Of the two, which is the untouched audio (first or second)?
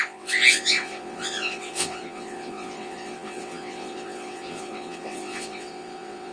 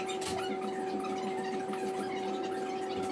second